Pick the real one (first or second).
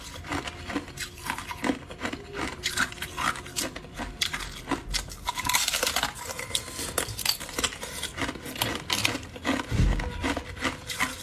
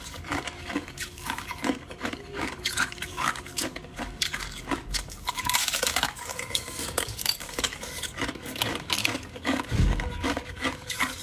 first